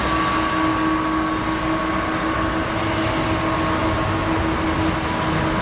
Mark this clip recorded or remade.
recorded